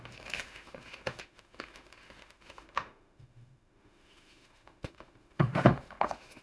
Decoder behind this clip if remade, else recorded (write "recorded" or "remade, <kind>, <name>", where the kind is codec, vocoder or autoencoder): remade, autoencoder, DAC-VAE